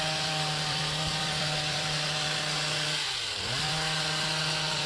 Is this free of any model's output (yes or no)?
no